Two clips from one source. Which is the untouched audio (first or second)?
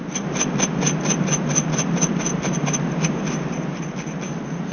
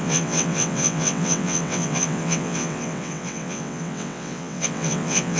first